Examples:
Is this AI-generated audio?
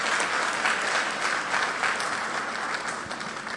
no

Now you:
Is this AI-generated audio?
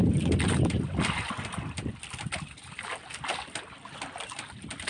no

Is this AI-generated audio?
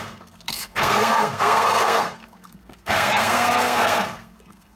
yes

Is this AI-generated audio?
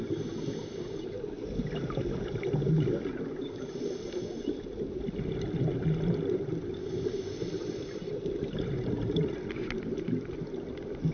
no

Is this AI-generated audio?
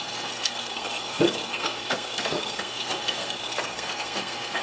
yes